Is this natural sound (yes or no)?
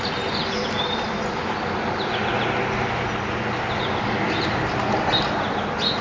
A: yes